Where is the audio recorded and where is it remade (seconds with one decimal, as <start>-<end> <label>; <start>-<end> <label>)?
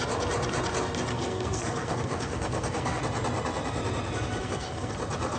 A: 0.0-1.1 recorded; 1.1-3.0 remade; 3.0-4.4 recorded; 4.4-4.9 remade; 4.9-5.4 recorded